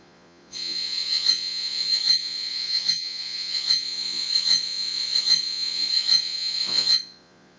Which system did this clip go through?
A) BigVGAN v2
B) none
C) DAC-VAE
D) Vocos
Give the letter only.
D